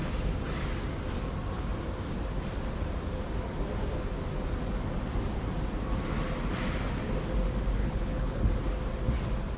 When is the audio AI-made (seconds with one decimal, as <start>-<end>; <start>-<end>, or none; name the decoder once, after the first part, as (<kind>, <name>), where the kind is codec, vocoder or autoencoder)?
7.8-8.4 (codec, HILCodec)